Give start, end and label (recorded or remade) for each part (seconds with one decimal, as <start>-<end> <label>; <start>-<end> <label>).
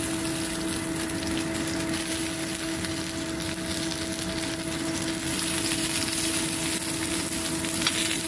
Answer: 0.0-8.3 recorded